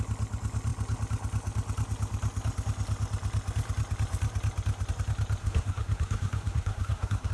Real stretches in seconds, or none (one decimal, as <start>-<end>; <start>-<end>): 0.0-5.4